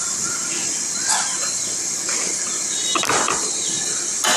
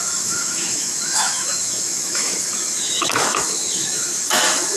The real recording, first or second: first